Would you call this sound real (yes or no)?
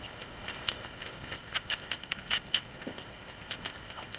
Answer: no